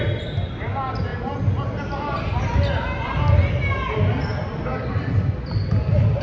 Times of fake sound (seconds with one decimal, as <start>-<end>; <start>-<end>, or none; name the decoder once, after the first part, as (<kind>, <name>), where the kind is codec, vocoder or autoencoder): none